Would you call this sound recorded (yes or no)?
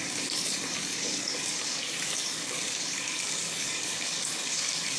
no